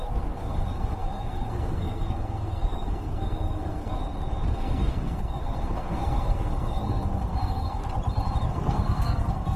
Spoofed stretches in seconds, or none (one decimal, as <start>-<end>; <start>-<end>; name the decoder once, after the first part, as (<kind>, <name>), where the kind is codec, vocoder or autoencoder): 0.0-4.0 (codec, SNAC); 4.5-7.8; 8.5-9.6